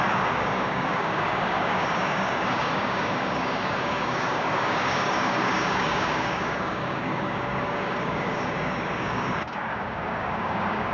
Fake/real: fake